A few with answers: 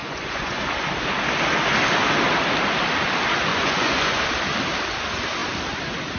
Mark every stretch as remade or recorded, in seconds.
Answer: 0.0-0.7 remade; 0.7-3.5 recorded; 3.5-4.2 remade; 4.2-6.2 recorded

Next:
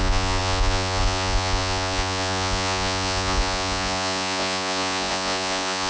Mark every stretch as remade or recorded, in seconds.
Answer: 0.0-5.9 remade

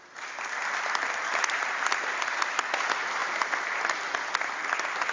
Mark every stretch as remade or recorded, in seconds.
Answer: 0.0-5.1 recorded

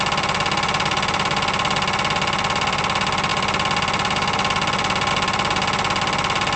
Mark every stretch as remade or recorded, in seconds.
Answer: 0.0-6.6 recorded

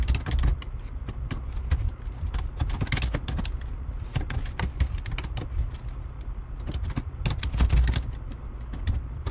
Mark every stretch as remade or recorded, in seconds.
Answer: 0.0-9.3 recorded

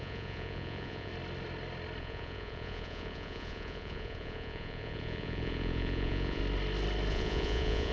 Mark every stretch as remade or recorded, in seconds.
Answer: 0.0-1.1 remade; 1.1-2.0 recorded; 2.0-6.4 remade; 6.4-7.1 recorded; 7.1-7.9 remade

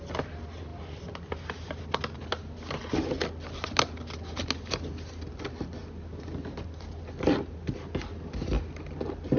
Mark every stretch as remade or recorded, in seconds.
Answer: 0.0-9.4 recorded